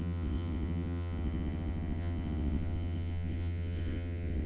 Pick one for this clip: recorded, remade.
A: remade